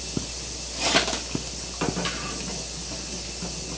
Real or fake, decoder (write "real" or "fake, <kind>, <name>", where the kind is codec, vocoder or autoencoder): real